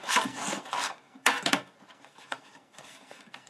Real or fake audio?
fake